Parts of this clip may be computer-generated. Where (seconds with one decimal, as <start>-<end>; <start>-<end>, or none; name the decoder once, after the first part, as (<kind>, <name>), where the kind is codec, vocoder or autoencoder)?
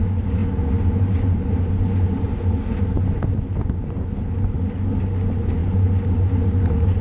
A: 0.4-1.1 (vocoder, BigVGAN v2)